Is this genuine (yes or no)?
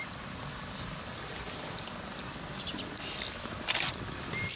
yes